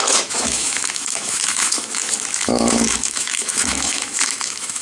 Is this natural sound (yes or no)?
no